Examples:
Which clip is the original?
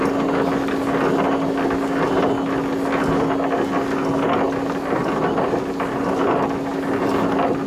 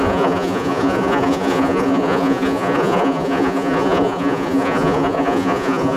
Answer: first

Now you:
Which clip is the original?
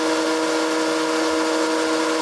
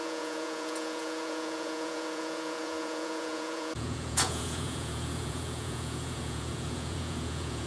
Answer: first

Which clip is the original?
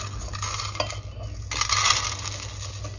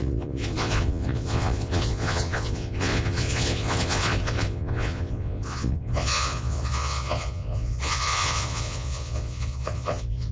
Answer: first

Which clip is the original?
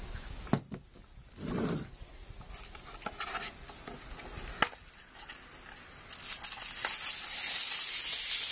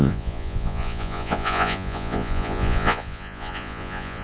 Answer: first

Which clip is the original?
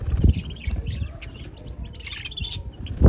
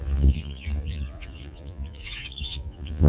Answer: first